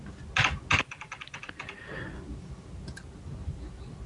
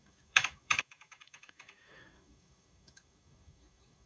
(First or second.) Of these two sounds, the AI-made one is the second